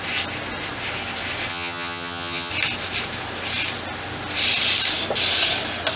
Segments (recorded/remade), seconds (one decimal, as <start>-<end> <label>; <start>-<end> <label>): 0.0-1.5 recorded; 1.5-2.5 remade; 2.5-6.0 recorded